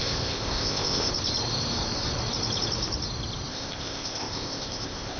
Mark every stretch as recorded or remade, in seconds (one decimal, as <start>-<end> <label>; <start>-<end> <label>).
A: 0.0-1.1 remade; 1.1-3.5 recorded; 3.5-5.2 remade